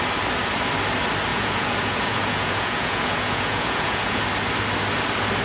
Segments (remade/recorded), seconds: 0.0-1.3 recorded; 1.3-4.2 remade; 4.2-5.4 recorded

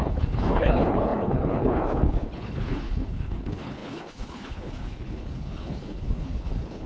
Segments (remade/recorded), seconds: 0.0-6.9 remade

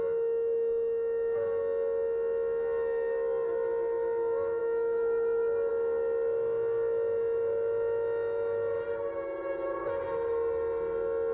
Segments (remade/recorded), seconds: 0.0-11.3 recorded

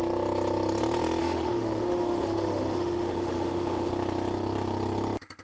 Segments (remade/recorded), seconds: 0.0-1.2 recorded; 1.2-3.9 remade; 3.9-5.4 recorded

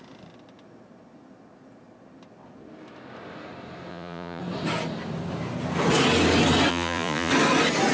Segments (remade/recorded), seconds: 0.0-3.9 recorded; 3.9-4.4 remade; 4.4-6.7 recorded; 6.7-7.3 remade; 7.3-7.9 recorded

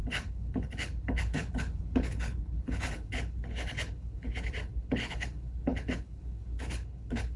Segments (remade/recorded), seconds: 0.0-7.4 remade

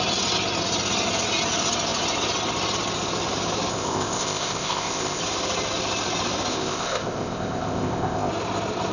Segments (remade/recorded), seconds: 0.0-3.7 recorded; 3.7-5.2 remade; 5.2-6.5 recorded; 6.5-8.3 remade; 8.3-8.9 recorded

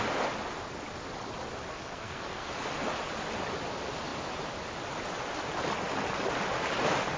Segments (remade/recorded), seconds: 0.0-1.7 recorded; 1.7-2.5 remade; 2.5-7.2 recorded